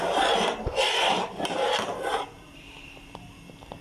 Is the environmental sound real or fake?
real